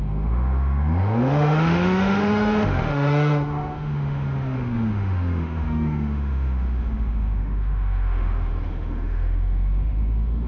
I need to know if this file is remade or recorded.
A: remade